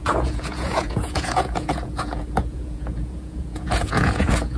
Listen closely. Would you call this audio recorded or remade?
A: remade